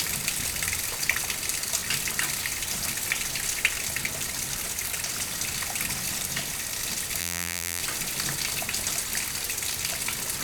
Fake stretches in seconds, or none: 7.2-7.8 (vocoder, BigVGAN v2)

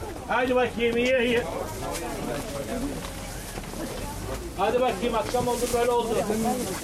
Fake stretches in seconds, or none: none

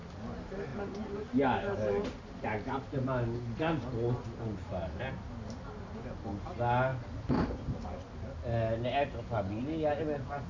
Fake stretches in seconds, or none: none

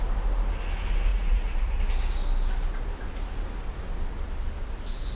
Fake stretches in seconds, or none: 1.1-1.8 (vocoder, Vocos)

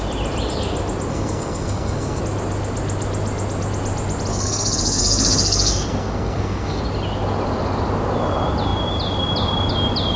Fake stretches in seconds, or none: 1.1-2.2 (codec, SNAC); 4.3-6.8

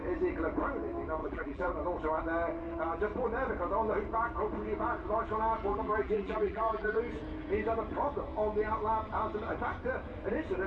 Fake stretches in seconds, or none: 1.2-1.7 (vocoder, BigVGAN v2); 5.7-7.0

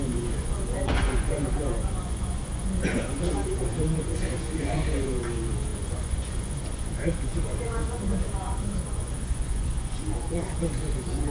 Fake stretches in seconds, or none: 0.0-11.3 (vocoder, Vocos)